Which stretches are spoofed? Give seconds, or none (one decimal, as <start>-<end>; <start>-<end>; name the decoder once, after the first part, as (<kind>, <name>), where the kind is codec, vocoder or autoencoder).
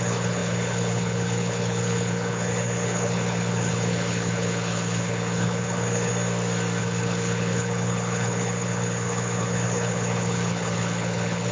0.0-6.1 (codec, HILCodec); 6.8-11.5